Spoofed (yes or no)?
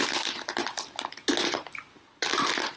no